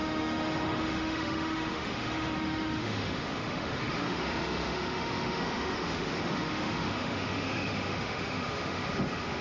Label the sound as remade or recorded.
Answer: remade